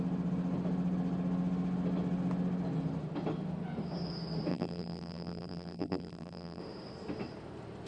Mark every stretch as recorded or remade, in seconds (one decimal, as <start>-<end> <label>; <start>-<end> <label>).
0.0-4.5 recorded; 4.5-6.6 remade; 6.6-7.9 recorded